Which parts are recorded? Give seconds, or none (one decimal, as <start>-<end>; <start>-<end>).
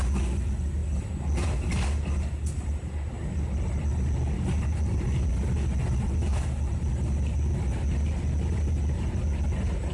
0.0-9.9